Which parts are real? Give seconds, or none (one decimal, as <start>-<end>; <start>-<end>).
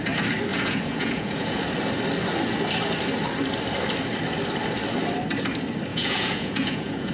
0.0-0.5; 1.6-5.9